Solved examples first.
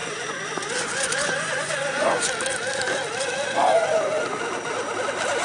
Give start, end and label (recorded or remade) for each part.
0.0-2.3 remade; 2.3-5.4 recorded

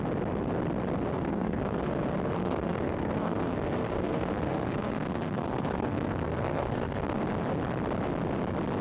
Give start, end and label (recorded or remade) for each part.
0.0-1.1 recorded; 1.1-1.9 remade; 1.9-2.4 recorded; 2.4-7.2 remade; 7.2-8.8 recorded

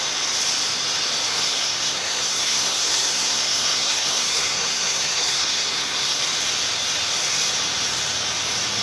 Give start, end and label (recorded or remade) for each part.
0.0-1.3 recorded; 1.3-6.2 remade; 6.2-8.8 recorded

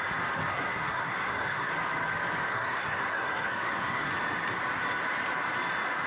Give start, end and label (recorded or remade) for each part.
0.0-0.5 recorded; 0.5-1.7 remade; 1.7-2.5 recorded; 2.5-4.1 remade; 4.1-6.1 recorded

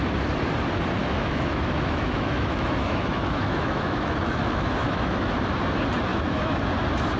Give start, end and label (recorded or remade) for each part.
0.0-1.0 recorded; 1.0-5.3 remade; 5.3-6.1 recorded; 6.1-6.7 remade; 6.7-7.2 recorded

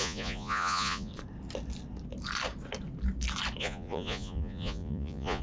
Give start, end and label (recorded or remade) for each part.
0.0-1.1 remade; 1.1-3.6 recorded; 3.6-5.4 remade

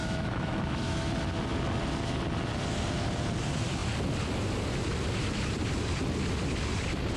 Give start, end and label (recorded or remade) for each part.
0.0-1.1 remade; 1.1-7.2 recorded

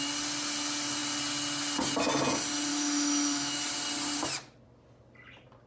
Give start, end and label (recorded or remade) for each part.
0.0-2.7 recorded; 2.7-3.6 remade; 3.6-5.7 recorded